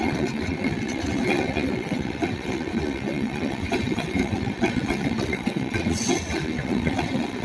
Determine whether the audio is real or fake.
fake